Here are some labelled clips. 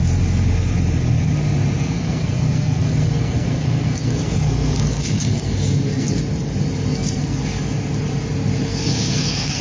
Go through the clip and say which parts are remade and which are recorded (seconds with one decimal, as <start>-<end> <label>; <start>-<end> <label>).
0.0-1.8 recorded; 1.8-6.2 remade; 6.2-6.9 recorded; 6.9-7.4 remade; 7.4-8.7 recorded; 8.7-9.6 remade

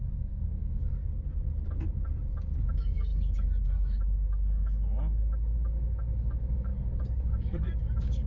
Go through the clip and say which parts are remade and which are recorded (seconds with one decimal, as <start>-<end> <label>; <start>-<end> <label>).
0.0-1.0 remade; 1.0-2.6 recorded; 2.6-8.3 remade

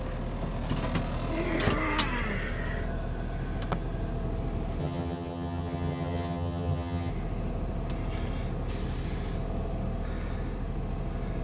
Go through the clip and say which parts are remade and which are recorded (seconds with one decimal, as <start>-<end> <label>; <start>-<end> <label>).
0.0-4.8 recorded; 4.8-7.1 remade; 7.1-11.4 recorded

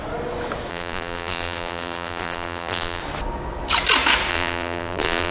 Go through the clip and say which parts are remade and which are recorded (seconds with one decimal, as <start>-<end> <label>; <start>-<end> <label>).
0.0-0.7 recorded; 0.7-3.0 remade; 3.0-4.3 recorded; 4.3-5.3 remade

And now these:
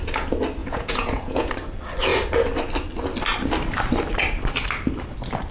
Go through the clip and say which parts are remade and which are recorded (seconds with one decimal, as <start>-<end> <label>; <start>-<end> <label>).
0.0-0.6 recorded; 0.6-1.5 remade; 1.5-5.5 recorded

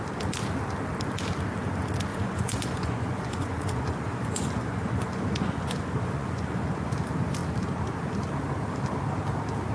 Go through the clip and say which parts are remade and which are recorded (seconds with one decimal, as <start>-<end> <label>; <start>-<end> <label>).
0.0-2.1 recorded; 2.1-6.9 remade; 6.9-9.7 recorded

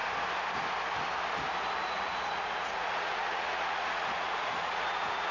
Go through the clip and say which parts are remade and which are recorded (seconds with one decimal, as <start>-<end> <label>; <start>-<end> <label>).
0.0-1.8 recorded; 1.8-5.3 remade

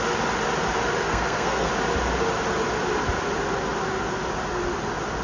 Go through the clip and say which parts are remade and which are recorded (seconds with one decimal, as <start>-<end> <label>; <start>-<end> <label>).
0.0-1.0 recorded; 1.0-1.7 remade; 1.7-5.2 recorded